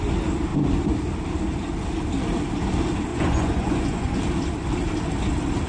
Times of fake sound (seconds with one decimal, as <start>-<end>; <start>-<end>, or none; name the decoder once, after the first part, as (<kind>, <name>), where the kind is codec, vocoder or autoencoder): 3.1-4.2 (vocoder, Vocos)